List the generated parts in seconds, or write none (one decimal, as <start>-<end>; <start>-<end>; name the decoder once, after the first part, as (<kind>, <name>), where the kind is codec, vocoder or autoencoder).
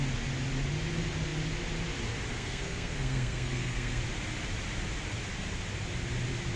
2.3-4.0 (codec, SNAC)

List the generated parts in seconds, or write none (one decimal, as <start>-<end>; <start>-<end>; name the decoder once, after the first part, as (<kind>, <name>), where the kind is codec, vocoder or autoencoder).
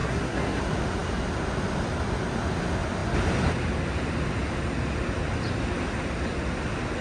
0.0-0.6 (codec, SNAC)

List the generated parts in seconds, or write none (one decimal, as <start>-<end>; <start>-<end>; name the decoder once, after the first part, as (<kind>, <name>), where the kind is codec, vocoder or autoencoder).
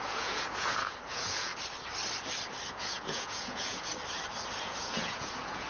0.0-1.5 (vocoder, Vocos); 2.7-3.9; 4.6-5.7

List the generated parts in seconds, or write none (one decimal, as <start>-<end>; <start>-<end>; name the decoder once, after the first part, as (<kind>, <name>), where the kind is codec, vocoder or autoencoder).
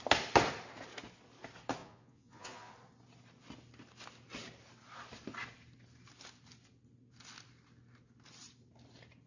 1.8-2.7 (vocoder, Vocos)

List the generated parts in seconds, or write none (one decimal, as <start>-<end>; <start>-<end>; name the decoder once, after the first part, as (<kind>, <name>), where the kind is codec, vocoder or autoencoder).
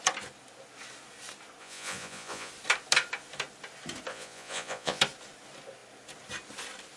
1.6-2.5 (vocoder, Vocos); 4.1-5.0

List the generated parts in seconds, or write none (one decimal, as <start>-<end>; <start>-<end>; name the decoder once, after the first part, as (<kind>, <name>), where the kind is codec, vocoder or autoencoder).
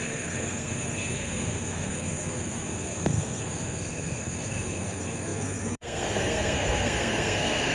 0.0-7.7 (codec, SNAC)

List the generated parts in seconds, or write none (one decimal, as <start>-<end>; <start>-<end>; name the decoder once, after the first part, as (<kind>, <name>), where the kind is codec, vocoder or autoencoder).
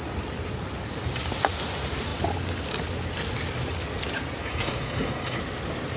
4.4-5.4 (codec, DAC)